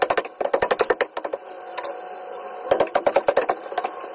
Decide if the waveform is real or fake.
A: real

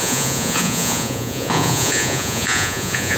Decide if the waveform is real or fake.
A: fake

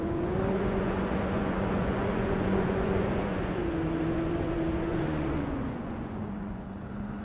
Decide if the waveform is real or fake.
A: fake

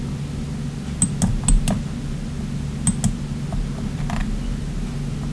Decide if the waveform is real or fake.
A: real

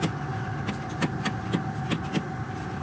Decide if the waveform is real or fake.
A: real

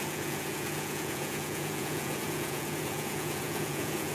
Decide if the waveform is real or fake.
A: fake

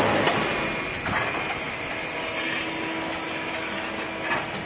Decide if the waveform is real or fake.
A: real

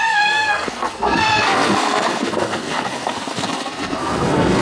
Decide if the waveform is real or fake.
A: fake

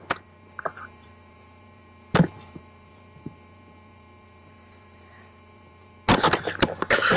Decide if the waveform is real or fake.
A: fake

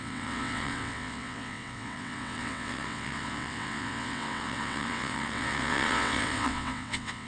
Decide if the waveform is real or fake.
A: fake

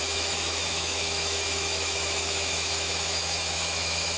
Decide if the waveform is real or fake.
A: fake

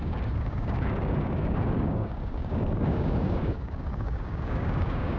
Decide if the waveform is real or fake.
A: fake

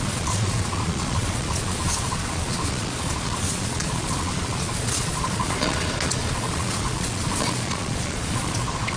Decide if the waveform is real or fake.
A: fake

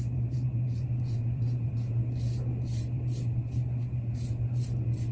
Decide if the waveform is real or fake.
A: fake